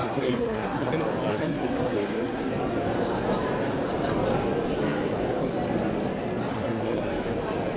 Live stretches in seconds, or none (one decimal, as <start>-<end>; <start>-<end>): 0.9-1.3; 2.4-6.5; 7.1-7.8